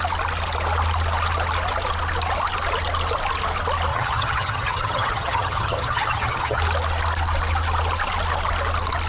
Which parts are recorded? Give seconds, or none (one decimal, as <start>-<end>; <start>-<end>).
0.0-3.9; 6.6-9.1

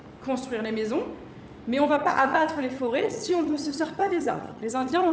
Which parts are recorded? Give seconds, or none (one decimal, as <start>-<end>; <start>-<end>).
0.0-1.9

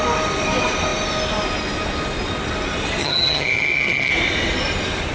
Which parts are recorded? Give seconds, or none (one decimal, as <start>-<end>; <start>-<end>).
0.0-3.0; 4.1-5.1